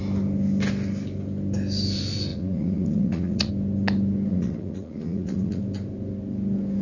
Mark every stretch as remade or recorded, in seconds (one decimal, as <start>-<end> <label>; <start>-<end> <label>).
0.0-2.3 recorded; 2.3-3.5 remade; 3.5-4.3 recorded; 4.3-5.6 remade; 5.6-6.8 recorded